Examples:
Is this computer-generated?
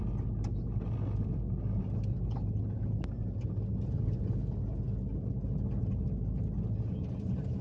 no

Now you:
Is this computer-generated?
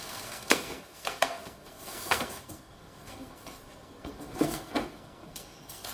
yes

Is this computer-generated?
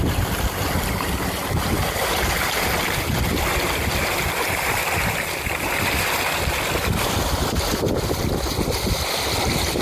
no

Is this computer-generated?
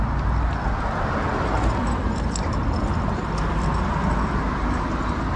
no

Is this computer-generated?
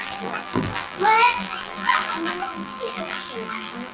yes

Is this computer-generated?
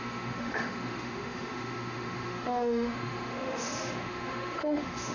yes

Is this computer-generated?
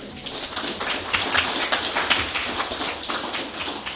no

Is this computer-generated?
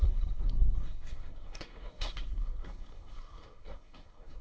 yes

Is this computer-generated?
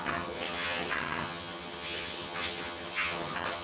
yes